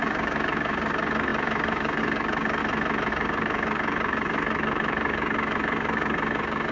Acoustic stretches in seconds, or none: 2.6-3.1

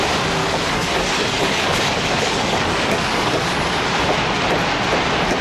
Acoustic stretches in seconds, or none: 0.0-0.4; 3.6-5.4